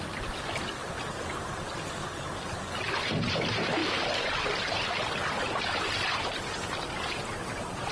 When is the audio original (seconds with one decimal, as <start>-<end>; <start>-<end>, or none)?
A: 0.0-7.9